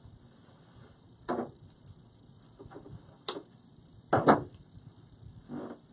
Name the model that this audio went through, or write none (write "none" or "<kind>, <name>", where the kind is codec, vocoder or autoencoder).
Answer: none